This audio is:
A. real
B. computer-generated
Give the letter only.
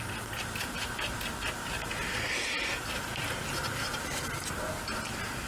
A